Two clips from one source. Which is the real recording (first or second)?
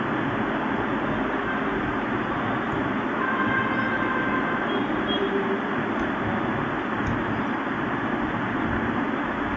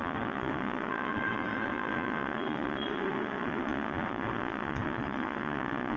first